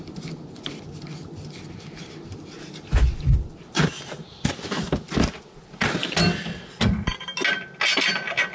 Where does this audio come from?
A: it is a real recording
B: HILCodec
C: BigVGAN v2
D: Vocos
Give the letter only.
A